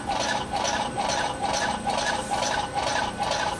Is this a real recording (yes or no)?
no